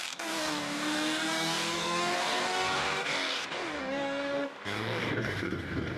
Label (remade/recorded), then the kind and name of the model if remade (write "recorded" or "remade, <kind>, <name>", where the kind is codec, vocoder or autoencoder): remade, codec, DAC